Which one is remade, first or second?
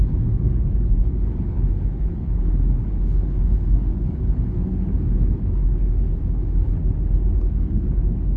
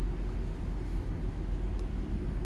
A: first